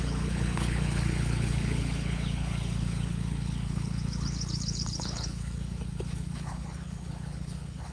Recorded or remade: remade